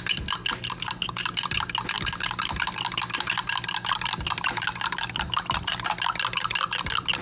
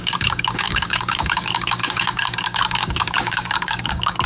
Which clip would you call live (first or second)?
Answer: first